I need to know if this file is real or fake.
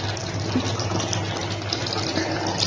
real